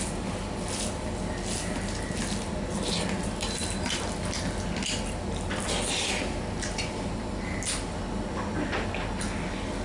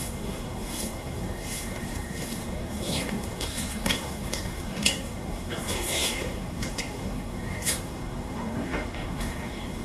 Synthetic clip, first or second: second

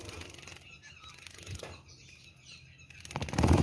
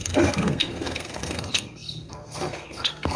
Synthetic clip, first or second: second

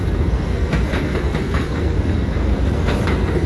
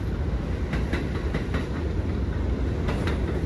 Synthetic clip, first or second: first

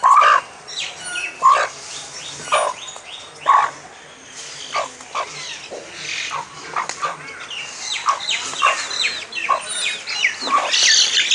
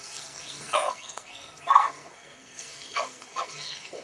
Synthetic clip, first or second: second